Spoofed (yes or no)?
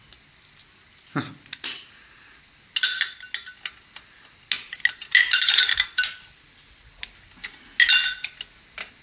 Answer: no